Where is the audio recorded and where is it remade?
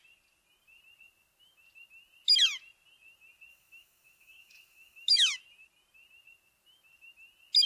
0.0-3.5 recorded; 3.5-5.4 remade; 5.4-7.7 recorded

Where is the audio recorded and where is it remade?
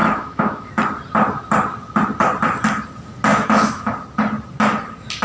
0.0-0.7 remade; 0.7-3.3 recorded; 3.3-3.9 remade; 3.9-5.2 recorded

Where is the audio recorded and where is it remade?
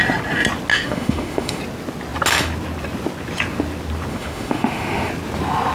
0.0-0.7 recorded; 0.7-1.6 remade; 1.6-4.1 recorded; 4.1-5.1 remade; 5.1-5.7 recorded